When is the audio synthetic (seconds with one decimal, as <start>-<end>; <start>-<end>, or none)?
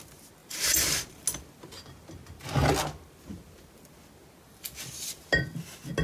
0.4-0.9